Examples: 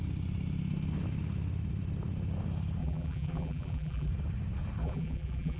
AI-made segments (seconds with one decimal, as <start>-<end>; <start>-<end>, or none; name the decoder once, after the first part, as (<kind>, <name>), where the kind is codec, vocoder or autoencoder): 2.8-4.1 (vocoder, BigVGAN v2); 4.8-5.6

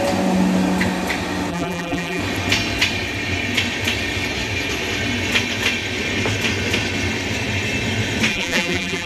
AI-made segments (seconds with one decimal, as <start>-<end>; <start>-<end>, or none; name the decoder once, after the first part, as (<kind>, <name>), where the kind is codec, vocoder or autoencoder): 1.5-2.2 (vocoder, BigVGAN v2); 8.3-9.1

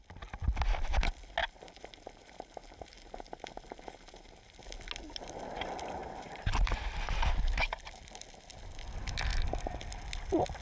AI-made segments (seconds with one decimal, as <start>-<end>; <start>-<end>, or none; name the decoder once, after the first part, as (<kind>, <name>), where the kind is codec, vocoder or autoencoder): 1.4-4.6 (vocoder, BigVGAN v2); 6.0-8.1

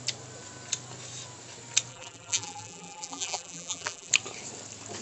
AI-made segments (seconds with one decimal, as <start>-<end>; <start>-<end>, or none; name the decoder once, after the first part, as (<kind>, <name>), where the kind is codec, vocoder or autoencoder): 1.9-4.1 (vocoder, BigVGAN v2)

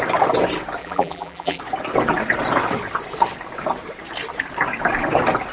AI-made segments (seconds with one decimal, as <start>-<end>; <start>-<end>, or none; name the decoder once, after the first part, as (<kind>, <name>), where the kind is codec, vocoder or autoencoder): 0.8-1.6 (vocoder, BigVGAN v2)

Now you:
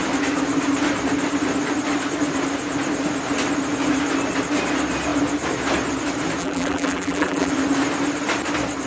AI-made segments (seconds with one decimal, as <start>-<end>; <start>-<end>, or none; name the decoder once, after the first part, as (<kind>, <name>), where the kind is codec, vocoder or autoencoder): 6.4-7.5 (vocoder, BigVGAN v2)

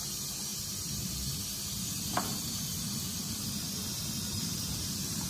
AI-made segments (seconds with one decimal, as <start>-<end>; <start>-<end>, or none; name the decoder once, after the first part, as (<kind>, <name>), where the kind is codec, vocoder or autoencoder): 0.0-0.5 (vocoder, BigVGAN v2); 1.6-3.8; 4.3-5.3